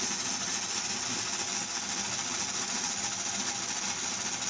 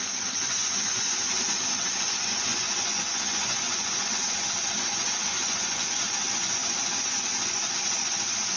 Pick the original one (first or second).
first